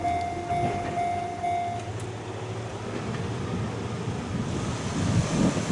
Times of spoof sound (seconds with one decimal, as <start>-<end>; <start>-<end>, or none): 1.9-5.3